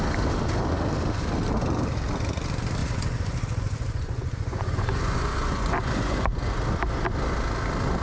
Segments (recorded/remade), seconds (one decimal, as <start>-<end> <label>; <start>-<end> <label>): 0.0-2.8 recorded; 2.8-6.6 remade; 6.6-8.0 recorded